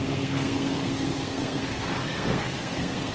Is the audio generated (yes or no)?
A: yes